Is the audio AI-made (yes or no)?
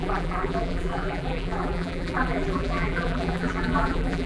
yes